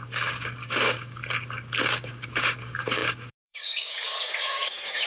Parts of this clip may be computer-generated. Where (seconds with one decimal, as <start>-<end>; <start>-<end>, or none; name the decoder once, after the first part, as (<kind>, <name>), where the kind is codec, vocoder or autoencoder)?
0.0-1.2 (codec, DAC); 1.8-5.1